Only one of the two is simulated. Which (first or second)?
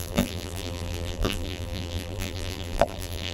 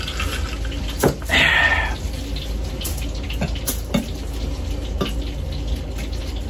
first